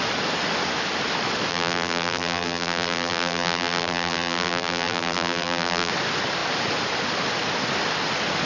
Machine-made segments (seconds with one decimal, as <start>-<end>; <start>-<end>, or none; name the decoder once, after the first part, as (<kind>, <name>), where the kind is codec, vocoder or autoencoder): 1.5-5.9 (vocoder, BigVGAN v2)